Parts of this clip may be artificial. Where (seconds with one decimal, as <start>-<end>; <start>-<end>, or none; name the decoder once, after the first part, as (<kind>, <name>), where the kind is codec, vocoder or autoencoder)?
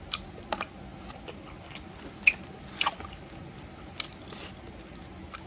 none